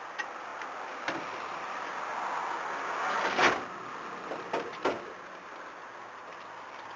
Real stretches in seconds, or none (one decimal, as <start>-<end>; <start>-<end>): 0.0-7.0